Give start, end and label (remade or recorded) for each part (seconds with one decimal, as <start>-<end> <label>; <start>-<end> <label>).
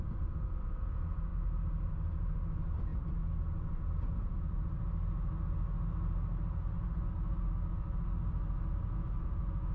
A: 0.0-9.7 recorded